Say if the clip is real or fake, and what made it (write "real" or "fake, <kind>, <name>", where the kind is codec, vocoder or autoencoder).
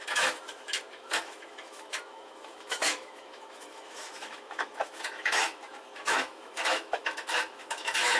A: fake, autoencoder, DAC-VAE